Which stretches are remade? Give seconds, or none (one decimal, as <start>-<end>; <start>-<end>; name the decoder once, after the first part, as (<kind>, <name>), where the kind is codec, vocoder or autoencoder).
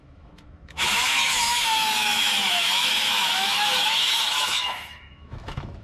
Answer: 0.0-5.8 (autoencoder, DAC-VAE)